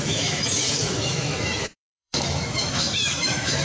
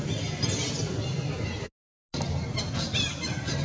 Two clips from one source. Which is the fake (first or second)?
first